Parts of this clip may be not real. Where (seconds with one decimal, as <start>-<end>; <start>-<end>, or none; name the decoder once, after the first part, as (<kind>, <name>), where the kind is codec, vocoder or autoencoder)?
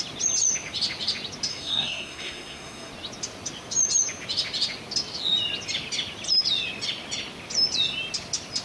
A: 1.5-2.9 (codec, SNAC)